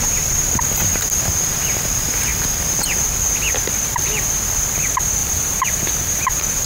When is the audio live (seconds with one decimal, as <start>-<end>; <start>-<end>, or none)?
0.0-5.2; 6.1-6.7